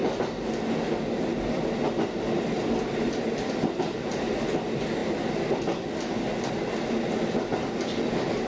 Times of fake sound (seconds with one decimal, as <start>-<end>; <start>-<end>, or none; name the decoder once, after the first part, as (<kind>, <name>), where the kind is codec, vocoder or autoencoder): none